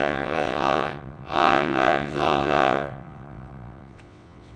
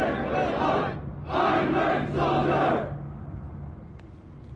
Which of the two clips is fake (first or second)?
first